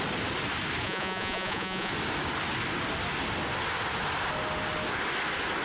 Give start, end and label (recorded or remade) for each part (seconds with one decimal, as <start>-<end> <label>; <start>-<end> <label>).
0.0-0.8 recorded; 0.8-1.9 remade; 1.9-5.6 recorded